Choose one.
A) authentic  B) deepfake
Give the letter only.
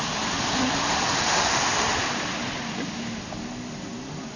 A